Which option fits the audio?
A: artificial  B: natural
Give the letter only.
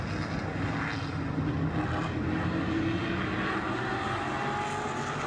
B